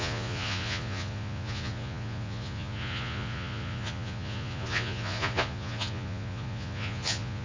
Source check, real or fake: fake